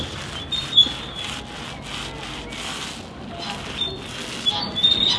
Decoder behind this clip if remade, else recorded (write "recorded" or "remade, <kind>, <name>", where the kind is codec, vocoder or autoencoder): recorded